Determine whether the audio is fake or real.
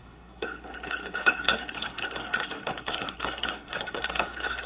fake